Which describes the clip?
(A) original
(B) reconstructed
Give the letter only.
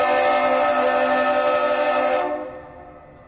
A